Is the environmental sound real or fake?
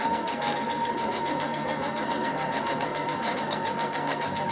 fake